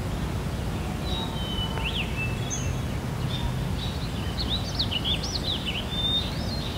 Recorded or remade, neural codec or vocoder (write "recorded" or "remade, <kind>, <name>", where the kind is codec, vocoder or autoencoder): recorded